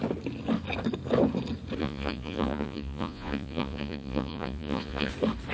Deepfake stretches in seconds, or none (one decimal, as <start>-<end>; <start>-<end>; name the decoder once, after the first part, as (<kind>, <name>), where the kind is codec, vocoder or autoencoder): 1.8-5.1 (vocoder, Vocos)